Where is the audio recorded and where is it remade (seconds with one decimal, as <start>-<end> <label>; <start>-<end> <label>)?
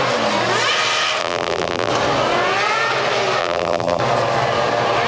0.0-1.2 recorded; 1.2-1.9 remade; 1.9-3.4 recorded; 3.4-4.0 remade; 4.0-5.1 recorded